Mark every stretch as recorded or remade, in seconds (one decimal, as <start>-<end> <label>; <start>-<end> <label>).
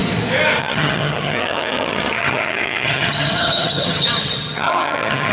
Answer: 0.0-0.6 recorded; 0.6-5.3 remade